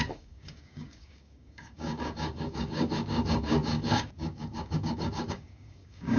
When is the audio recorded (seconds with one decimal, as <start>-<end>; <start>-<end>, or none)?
none